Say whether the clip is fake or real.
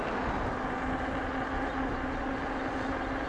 real